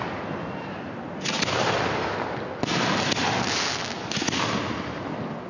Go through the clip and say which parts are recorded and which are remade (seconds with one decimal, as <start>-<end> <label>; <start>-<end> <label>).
0.0-5.5 recorded